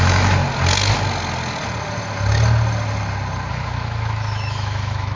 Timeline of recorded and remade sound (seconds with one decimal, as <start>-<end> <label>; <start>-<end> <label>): 0.0-0.4 remade; 0.4-3.5 recorded; 3.5-5.2 remade